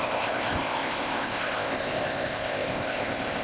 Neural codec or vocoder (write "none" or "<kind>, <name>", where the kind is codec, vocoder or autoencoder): codec, ZipCodec